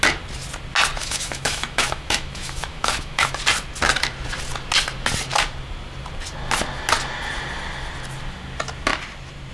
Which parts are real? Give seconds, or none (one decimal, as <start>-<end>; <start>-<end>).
0.0-1.0; 3.4-9.5